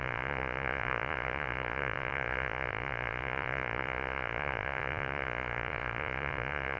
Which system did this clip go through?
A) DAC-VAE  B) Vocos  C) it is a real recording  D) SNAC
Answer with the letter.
B